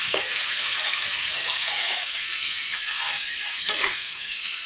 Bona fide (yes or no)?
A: no